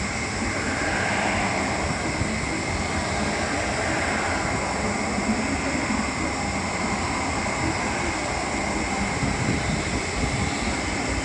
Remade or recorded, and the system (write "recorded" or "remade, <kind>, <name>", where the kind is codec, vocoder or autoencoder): recorded